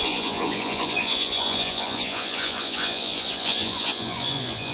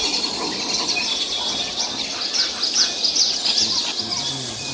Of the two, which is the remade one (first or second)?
first